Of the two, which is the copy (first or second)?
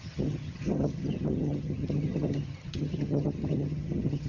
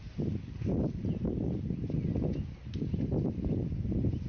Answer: first